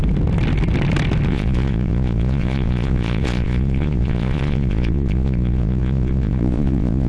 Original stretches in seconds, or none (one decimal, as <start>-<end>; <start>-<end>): 0.0-1.3